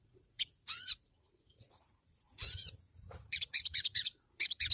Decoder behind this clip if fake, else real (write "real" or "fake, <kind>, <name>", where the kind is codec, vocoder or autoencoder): fake, vocoder, Vocos